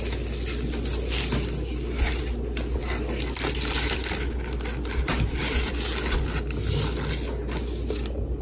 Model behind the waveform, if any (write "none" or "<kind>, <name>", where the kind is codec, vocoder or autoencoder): none